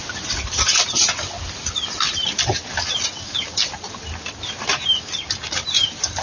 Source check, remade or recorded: recorded